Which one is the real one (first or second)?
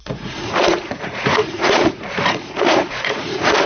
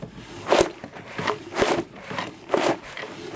second